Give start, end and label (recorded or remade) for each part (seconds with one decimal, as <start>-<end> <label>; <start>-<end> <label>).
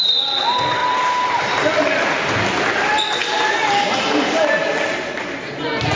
0.0-6.0 recorded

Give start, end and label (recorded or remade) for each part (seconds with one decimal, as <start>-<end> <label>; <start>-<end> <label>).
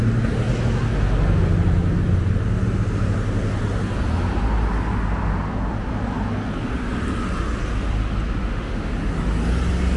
0.0-8.4 recorded; 8.4-8.9 remade; 8.9-10.0 recorded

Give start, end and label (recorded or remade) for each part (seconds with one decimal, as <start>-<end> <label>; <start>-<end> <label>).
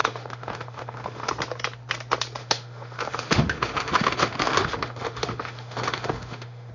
0.0-1.3 remade; 1.3-2.4 recorded; 2.4-6.7 remade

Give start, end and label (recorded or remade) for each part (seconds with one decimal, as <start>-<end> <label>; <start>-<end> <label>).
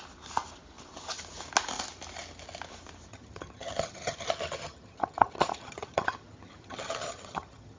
0.0-3.1 recorded; 3.1-7.8 remade